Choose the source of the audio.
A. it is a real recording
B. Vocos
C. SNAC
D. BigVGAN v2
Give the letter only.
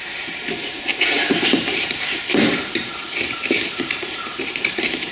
D